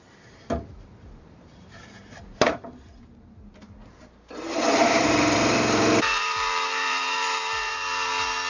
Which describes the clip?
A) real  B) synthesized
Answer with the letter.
B